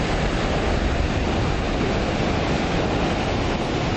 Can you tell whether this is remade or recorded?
recorded